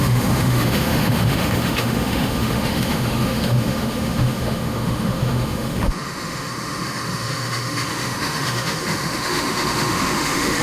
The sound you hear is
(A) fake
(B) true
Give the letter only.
A